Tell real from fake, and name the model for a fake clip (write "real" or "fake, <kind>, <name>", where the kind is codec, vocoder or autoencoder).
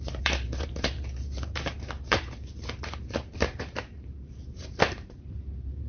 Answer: fake, vocoder, BigVGAN v2